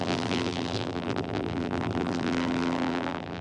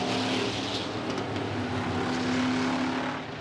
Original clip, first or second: second